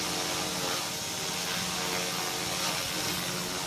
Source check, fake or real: real